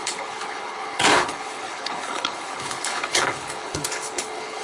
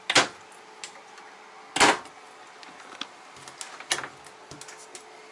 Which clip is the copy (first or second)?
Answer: first